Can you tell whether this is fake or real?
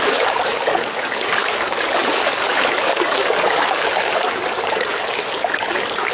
fake